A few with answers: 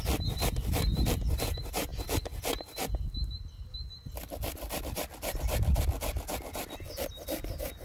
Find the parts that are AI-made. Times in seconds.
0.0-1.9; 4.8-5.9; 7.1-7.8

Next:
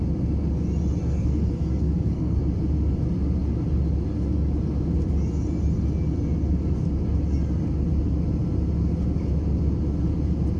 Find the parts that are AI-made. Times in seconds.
1.0-2.4